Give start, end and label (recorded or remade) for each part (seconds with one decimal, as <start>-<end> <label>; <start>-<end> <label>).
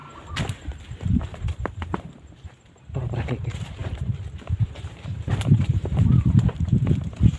0.0-0.8 recorded; 0.8-7.4 remade